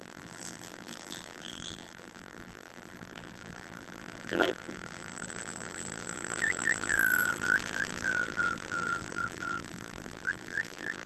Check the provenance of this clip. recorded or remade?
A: remade